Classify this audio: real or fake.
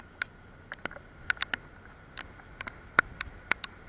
real